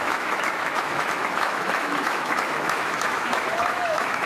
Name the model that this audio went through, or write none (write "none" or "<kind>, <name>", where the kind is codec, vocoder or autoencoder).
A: autoencoder, DAC-VAE